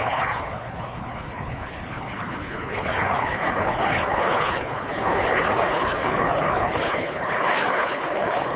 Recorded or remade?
remade